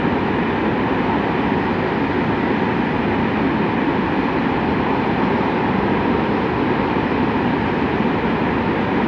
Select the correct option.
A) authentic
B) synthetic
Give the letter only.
A